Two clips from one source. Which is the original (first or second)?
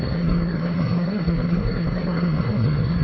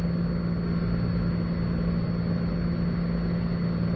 second